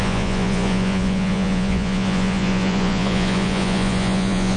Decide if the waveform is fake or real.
fake